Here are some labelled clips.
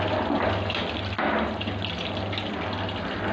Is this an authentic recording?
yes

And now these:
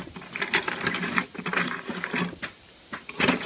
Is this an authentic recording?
no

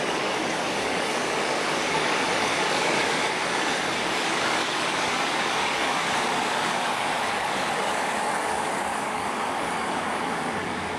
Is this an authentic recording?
no